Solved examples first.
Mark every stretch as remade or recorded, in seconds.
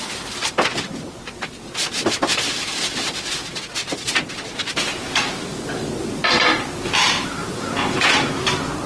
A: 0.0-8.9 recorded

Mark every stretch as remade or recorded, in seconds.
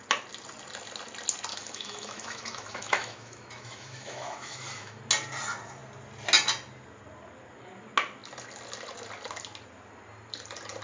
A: 0.0-1.5 recorded; 1.5-5.0 remade; 5.0-10.8 recorded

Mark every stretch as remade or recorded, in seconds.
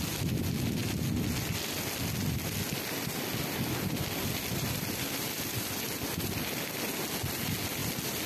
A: 0.0-8.3 recorded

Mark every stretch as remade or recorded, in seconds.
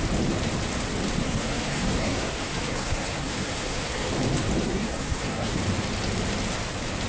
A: 0.0-1.2 recorded; 1.2-4.1 remade; 4.1-4.6 recorded; 4.6-5.6 remade; 5.6-7.1 recorded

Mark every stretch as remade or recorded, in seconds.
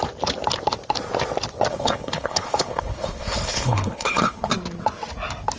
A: 0.0-1.7 recorded; 1.7-4.5 remade; 4.5-5.6 recorded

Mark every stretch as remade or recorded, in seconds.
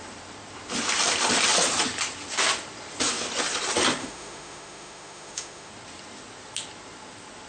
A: 0.0-4.0 recorded; 4.0-5.7 remade; 5.7-7.5 recorded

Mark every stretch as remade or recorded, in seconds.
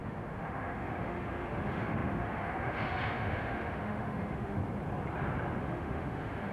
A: 0.0-4.6 remade; 4.6-5.6 recorded; 5.6-6.5 remade